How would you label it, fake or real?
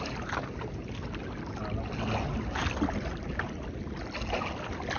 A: real